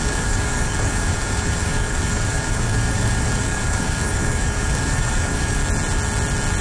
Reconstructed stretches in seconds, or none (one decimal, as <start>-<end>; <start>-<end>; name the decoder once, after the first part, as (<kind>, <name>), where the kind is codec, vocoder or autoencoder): 0.0-5.6 (codec, DAC)

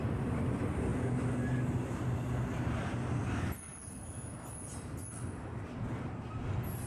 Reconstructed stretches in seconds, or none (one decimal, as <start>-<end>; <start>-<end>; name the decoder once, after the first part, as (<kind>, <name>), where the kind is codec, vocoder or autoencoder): none

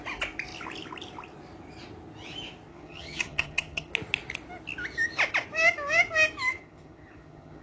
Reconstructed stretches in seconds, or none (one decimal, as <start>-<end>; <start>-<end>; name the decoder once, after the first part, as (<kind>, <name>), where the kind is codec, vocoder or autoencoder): 2.7-3.9 (vocoder, HiFi-GAN); 6.5-7.6

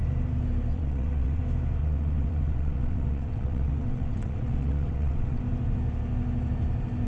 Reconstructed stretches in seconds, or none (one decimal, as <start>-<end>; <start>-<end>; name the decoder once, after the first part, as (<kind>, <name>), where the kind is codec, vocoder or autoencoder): 0.7-1.4 (vocoder, WaveNeXt); 1.8-5.4

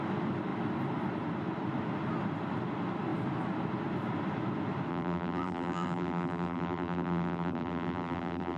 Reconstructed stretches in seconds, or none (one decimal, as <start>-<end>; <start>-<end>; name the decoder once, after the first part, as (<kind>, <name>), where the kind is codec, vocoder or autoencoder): 4.9-8.6 (vocoder, BigVGAN v2)